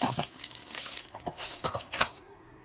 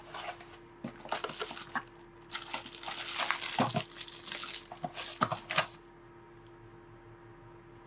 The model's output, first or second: first